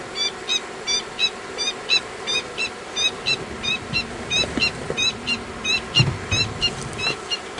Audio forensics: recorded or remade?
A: recorded